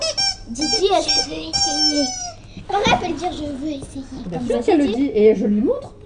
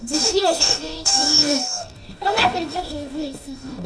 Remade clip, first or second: second